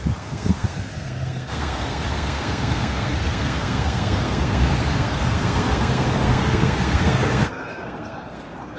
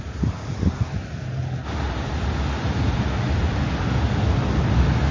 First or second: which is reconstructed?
first